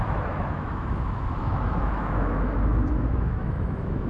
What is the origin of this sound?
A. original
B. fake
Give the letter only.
B